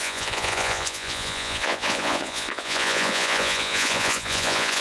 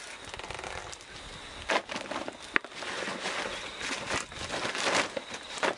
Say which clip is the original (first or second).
second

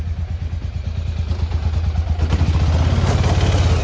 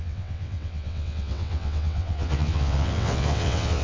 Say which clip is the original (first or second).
first